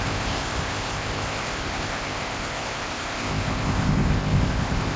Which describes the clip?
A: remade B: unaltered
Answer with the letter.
A